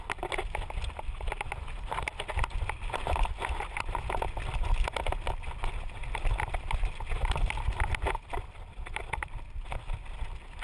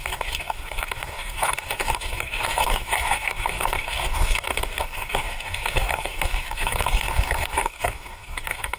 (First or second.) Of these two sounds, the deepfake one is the second